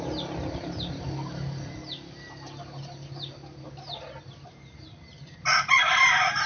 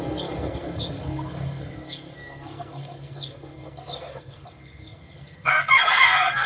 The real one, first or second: first